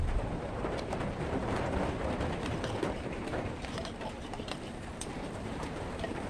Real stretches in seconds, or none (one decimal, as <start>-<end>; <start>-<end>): none